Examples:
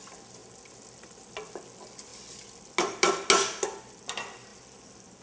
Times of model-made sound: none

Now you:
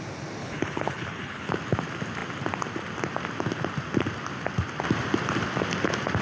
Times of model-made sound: 0.4-1.5

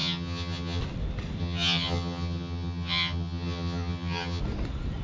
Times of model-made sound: 0.0-0.8; 1.4-4.4